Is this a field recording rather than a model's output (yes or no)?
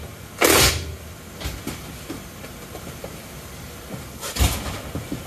yes